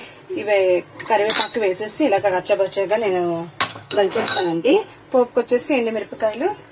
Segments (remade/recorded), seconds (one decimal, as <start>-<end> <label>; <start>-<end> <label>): 0.0-3.7 recorded; 3.7-4.9 remade; 4.9-6.7 recorded